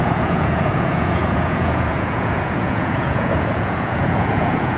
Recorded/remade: remade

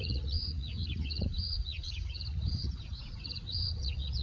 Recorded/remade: remade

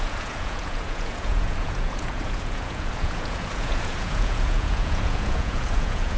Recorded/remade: remade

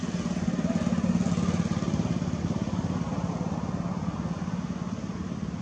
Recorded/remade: recorded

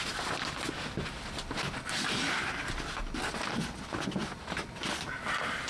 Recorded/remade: recorded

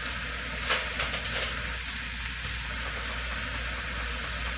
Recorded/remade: recorded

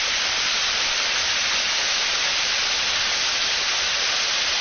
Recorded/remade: recorded